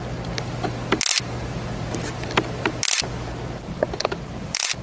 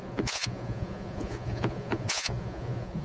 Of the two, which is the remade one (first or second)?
second